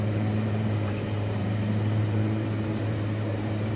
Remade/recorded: remade